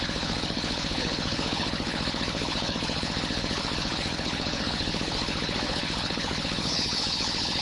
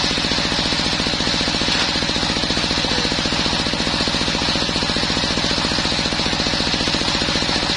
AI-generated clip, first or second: first